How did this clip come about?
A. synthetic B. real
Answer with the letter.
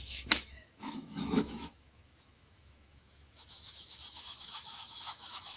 A